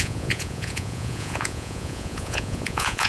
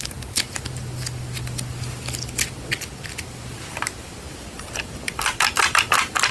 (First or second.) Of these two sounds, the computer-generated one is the first